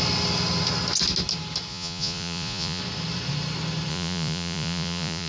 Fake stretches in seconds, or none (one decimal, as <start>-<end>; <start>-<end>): 1.7-2.8; 3.9-5.3